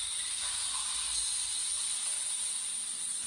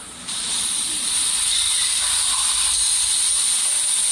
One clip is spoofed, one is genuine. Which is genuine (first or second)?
first